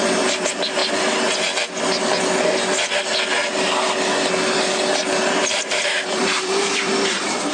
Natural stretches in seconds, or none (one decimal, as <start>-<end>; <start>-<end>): 0.8-5.3